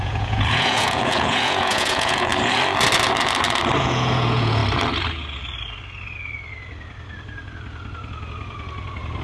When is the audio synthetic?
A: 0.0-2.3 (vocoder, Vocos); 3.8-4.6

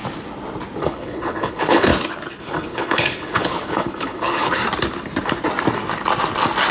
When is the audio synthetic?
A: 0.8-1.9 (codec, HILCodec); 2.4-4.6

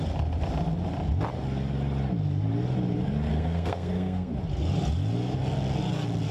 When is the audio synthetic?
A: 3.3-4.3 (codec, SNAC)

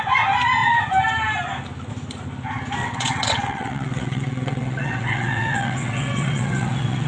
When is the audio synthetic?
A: 2.8-7.1 (vocoder, WaveNeXt)

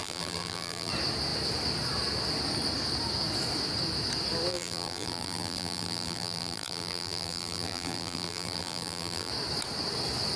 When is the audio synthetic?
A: 0.0-0.9 (vocoder, BigVGAN v2); 4.5-9.3

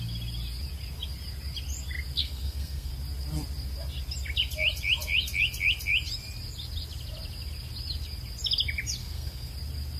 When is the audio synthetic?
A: 2.2-2.9 (codec, SNAC); 9.0-9.5

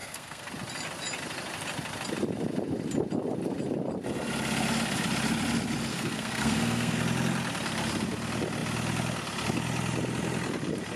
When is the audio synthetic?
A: 0.0-0.5 (codec, SNAC); 5.9-7.0